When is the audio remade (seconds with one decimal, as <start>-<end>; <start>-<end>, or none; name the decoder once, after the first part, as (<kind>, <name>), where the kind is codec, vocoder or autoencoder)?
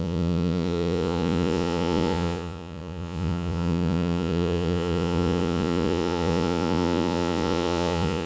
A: 0.0-8.3 (vocoder, Vocos)